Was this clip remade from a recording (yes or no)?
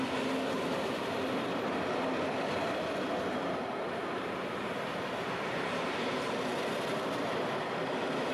no